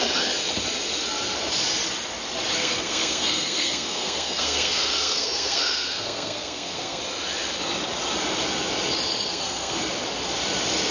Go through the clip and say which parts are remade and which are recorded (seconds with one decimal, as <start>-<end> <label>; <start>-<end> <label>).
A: 0.0-2.6 recorded; 2.6-7.0 remade; 7.0-9.3 recorded; 9.3-9.8 remade; 9.8-10.9 recorded